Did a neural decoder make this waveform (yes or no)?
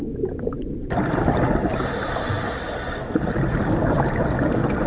no